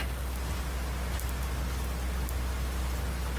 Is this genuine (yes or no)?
yes